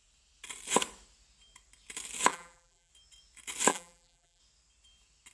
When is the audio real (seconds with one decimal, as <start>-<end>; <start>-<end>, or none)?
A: 0.0-2.3; 2.9-3.7; 4.4-5.3